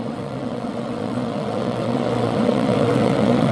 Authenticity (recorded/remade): remade